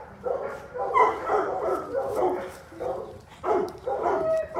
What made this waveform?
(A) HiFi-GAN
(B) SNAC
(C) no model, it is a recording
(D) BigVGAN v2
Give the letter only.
D